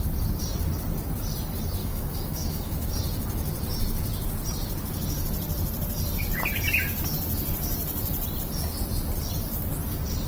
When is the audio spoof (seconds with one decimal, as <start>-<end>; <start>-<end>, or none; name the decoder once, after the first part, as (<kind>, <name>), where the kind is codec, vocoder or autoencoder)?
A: 1.8-2.9 (autoencoder, DAC-VAE)